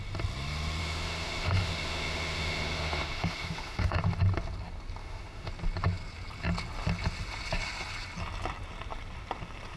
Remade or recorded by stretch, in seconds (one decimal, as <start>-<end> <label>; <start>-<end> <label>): 0.0-0.8 recorded; 0.8-4.0 remade; 4.0-5.0 recorded; 5.0-5.5 remade; 5.5-9.8 recorded